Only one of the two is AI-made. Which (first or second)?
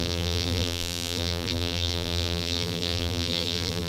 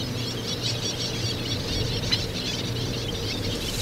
first